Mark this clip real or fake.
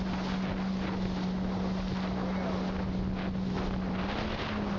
real